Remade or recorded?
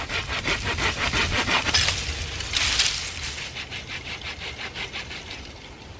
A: recorded